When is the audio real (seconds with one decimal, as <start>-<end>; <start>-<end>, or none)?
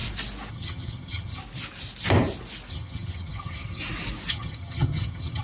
0.0-0.5; 1.4-2.7; 3.8-4.3